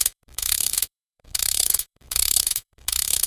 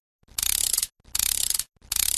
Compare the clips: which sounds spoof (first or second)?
first